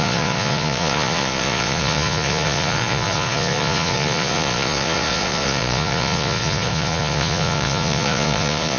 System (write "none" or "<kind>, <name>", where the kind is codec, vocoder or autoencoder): vocoder, Vocos